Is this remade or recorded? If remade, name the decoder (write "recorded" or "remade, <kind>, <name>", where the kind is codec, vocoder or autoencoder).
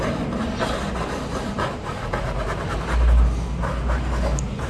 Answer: recorded